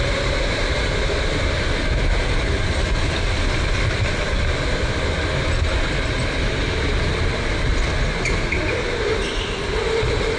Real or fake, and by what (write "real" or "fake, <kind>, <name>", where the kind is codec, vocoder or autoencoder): real